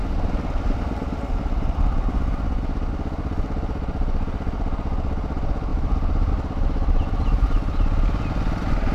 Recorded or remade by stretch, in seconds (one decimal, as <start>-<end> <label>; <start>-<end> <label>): 0.0-5.7 recorded; 5.7-6.3 remade; 6.3-8.9 recorded